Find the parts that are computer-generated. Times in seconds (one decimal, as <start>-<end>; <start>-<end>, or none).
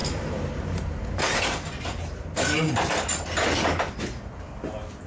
0.0-2.7